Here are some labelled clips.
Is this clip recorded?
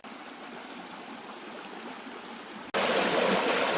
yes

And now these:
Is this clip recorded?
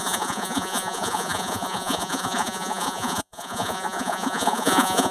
no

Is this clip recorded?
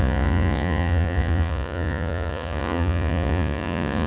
no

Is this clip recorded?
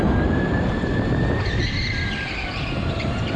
yes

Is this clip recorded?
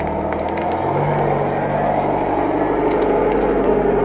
yes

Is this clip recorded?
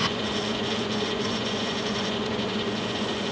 no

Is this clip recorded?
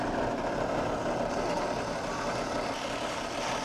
yes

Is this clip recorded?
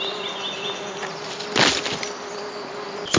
yes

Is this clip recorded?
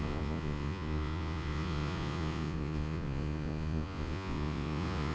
no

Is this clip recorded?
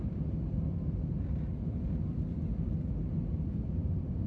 yes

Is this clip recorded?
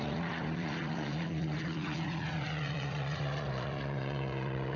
no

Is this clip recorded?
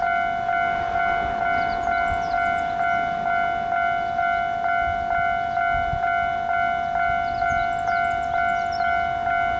yes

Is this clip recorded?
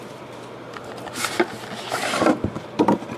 yes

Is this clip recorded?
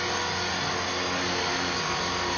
yes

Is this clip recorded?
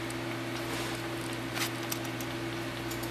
yes